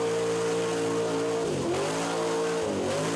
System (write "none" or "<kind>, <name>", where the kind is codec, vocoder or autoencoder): none